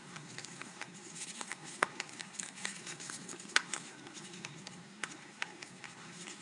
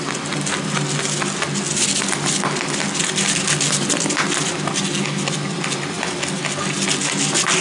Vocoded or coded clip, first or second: first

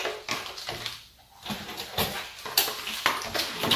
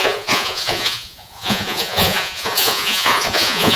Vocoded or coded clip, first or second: second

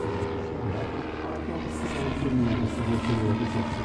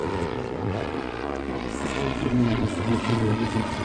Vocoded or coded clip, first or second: second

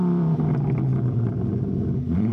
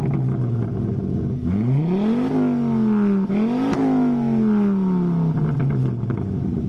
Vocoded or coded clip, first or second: first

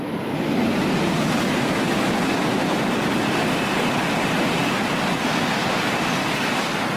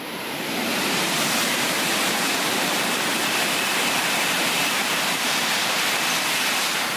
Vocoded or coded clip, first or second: second